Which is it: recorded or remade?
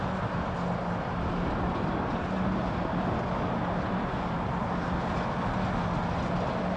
recorded